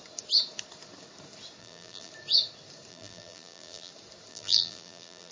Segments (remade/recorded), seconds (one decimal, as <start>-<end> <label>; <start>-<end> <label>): 0.0-1.6 recorded; 1.6-2.1 remade; 2.1-2.9 recorded; 2.9-3.9 remade; 3.9-4.3 recorded; 4.3-5.3 remade